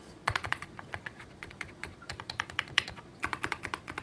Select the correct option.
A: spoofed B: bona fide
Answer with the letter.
A